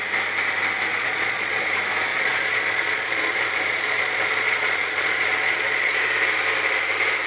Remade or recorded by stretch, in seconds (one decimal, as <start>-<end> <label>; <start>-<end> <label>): 0.0-0.9 recorded; 0.9-1.6 remade; 1.6-2.1 recorded; 2.1-6.0 remade; 6.0-7.3 recorded